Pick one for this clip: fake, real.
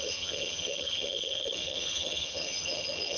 fake